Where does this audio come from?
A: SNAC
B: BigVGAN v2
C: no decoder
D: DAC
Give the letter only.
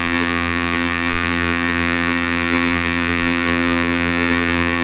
B